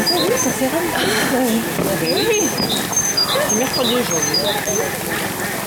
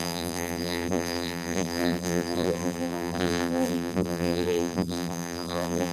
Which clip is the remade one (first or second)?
second